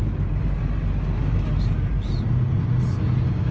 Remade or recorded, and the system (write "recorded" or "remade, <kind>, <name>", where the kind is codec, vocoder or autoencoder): recorded